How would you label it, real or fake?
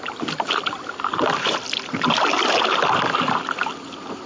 real